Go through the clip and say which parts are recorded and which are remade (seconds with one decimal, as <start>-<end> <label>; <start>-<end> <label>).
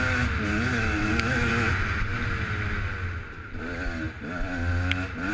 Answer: 0.0-0.7 recorded; 0.7-1.5 remade; 1.5-5.3 recorded